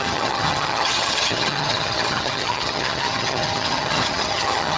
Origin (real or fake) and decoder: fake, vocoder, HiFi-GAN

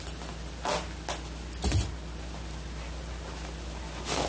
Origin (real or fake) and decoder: real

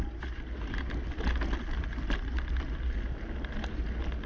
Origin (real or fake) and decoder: real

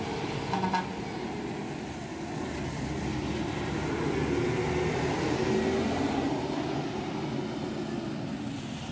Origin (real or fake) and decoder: real